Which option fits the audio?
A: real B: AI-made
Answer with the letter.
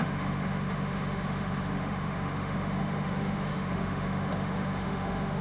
B